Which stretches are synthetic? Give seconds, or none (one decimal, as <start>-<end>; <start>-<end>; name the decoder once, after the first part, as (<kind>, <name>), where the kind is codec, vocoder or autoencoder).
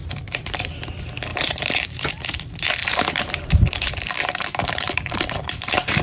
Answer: 0.0-0.8 (vocoder, BigVGAN v2); 1.3-2.1; 2.8-6.0